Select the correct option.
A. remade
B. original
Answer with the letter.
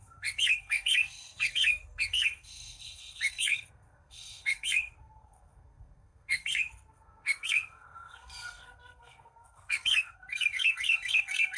A